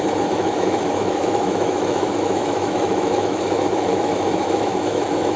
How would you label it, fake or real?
fake